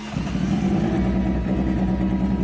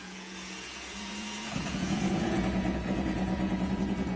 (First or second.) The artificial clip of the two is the second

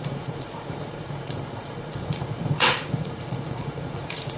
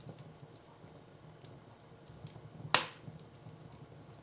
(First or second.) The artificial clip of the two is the first